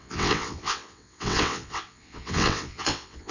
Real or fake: fake